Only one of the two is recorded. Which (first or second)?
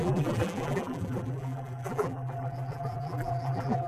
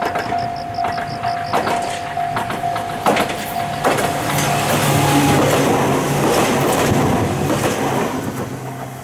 second